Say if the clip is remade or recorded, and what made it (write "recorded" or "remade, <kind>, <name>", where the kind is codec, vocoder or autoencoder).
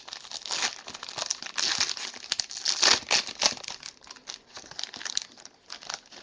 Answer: recorded